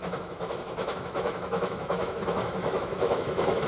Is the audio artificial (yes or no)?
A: yes